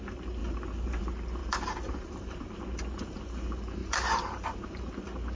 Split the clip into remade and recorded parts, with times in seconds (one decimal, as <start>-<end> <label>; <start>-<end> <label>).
0.0-0.4 recorded; 0.4-1.0 remade; 1.0-1.4 recorded; 1.4-2.6 remade; 2.6-3.8 recorded; 3.8-4.8 remade; 4.8-5.4 recorded